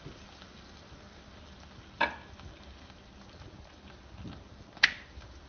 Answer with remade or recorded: recorded